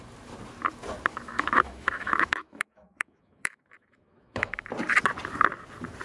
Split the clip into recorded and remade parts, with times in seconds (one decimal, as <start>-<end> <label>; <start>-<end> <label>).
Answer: 0.0-1.1 recorded; 1.1-4.7 remade; 4.7-6.0 recorded